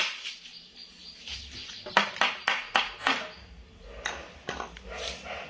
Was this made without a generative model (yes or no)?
yes